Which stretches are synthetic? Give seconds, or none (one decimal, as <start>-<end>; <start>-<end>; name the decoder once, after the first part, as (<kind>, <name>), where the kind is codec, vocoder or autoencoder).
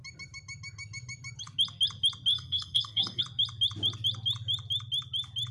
2.3-3.2 (codec, SNAC)